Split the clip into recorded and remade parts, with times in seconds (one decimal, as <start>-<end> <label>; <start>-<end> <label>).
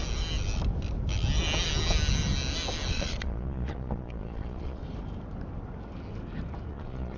0.0-2.9 recorded; 2.9-4.8 remade; 4.8-6.7 recorded; 6.7-7.2 remade